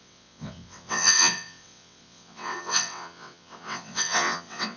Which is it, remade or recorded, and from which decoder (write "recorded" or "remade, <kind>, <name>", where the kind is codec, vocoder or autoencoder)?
remade, vocoder, WaveNeXt